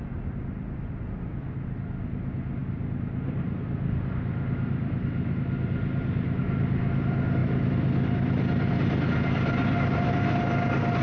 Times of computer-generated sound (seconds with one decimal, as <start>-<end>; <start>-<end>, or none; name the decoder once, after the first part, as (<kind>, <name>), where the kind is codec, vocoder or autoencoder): none